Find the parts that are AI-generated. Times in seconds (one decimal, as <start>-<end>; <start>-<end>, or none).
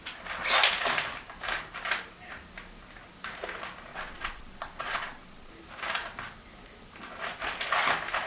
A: 3.9-5.5